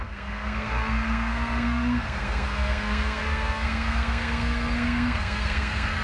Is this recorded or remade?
remade